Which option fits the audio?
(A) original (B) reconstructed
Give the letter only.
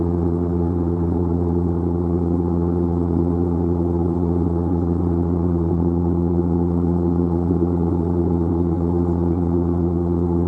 B